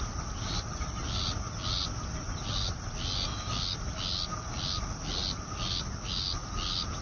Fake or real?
real